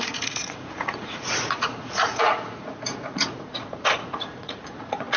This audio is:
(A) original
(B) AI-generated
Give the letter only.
B